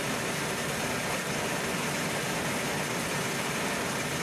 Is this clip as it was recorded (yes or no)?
no